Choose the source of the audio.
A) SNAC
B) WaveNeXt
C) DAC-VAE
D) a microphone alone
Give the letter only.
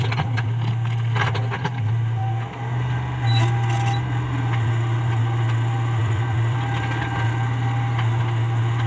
D